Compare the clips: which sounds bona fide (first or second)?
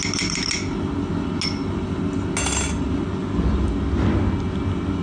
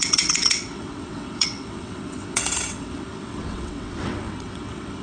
first